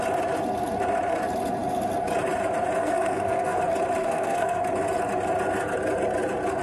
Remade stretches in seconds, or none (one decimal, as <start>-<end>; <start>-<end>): 2.8-3.6; 4.0-4.6